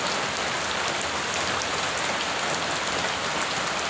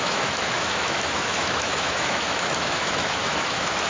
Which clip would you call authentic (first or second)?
first